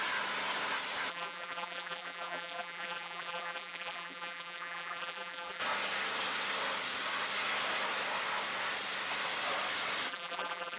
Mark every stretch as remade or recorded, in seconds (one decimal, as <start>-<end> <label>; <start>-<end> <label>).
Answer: 0.0-1.1 recorded; 1.1-5.6 remade; 5.6-10.1 recorded; 10.1-10.8 remade